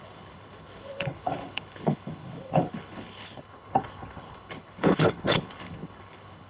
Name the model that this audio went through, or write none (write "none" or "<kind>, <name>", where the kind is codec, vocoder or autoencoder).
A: codec, HILCodec